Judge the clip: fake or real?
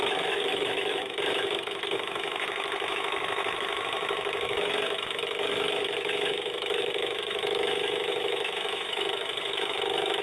fake